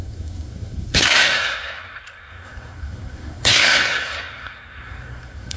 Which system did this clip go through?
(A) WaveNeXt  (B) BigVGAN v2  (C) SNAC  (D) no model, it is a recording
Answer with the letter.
C